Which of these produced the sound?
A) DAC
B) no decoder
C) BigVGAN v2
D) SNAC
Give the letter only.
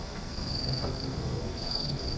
D